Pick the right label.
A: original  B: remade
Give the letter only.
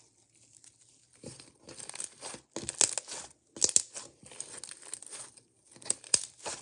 A